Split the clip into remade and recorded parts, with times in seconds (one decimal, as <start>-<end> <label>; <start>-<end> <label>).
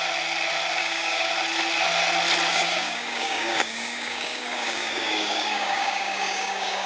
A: 0.0-0.8 recorded; 0.8-1.3 remade; 1.3-2.5 recorded; 2.5-6.9 remade